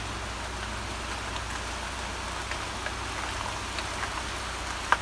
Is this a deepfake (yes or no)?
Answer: no